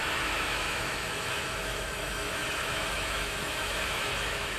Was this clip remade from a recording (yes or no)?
yes